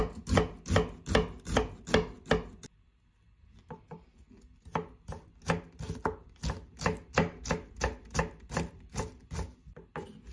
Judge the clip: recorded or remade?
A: recorded